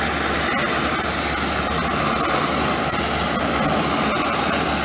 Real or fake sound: real